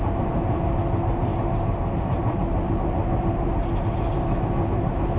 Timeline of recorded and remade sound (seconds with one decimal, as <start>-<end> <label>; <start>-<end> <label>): 0.0-5.2 recorded